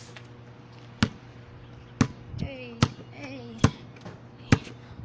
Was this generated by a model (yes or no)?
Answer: no